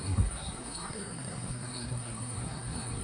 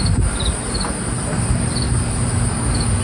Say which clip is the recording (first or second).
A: second